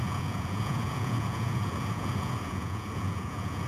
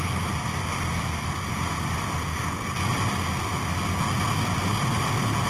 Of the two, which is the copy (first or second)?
first